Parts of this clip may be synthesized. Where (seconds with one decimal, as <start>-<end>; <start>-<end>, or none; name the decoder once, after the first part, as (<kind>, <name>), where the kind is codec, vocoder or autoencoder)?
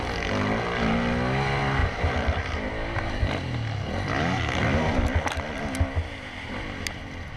1.8-2.7 (vocoder, BigVGAN v2)